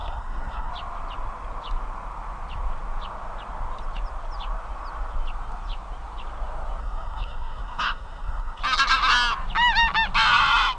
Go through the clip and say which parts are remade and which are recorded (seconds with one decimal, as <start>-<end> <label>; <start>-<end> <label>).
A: 0.0-0.7 remade; 0.7-6.8 recorded; 6.8-8.6 remade; 8.6-10.8 recorded